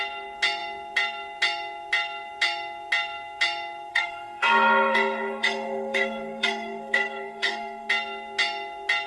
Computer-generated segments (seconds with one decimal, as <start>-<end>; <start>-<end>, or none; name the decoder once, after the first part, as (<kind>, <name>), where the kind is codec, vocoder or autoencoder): 3.9-7.9 (codec, SNAC)

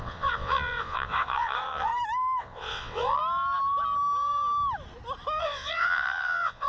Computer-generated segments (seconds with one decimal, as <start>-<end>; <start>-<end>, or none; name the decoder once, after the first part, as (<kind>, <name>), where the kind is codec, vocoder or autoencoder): 0.0-1.9 (vocoder, WaveNeXt); 2.4-3.2; 5.4-6.7

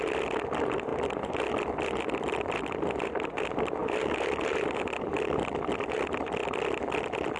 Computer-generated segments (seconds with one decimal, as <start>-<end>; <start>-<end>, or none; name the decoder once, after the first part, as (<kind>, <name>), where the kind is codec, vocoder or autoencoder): 0.9-3.1 (vocoder, BigVGAN v2); 3.8-6.1

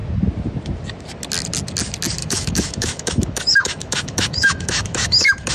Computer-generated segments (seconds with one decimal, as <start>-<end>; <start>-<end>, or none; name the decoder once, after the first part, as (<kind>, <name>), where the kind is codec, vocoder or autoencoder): 2.2-5.5 (autoencoder, DAC-VAE)

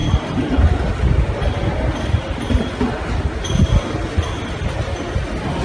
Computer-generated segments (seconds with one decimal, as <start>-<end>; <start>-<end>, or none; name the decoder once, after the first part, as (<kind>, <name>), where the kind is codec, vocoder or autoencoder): none

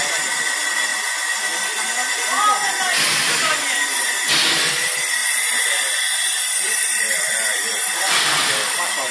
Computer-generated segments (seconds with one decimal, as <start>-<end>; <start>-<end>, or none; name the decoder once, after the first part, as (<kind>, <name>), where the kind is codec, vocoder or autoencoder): 0.0-0.9 (vocoder, BigVGAN v2); 4.3-9.1